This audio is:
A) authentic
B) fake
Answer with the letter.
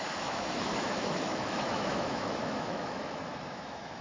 B